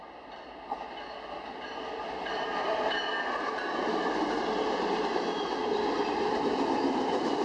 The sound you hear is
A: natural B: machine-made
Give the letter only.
A